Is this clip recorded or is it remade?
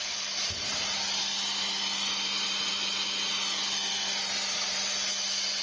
recorded